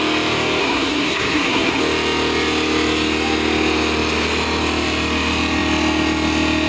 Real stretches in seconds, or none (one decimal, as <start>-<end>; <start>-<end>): 0.0-0.6; 1.8-6.7